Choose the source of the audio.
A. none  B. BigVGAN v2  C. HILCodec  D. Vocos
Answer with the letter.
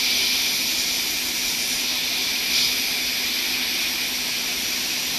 A